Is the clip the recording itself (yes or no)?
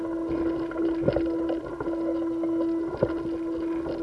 yes